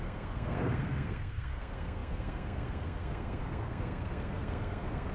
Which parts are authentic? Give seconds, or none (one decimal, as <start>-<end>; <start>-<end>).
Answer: none

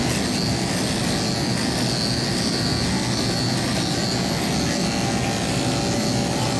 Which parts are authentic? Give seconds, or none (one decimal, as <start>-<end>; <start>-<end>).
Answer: 0.0-6.6

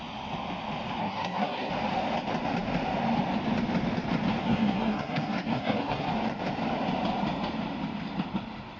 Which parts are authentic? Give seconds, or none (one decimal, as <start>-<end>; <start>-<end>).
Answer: 0.0-1.0; 1.7-4.4; 6.1-8.8

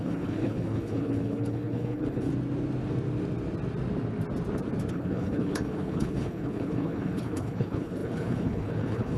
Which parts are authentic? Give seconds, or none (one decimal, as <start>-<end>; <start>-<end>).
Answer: 2.3-4.9

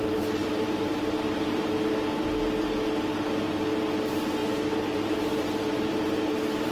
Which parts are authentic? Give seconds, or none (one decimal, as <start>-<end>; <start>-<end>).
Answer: 0.0-0.4; 1.7-4.4; 6.3-6.7